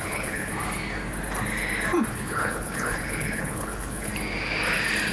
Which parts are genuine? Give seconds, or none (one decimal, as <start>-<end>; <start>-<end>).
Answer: 0.5-2.1; 4.1-5.1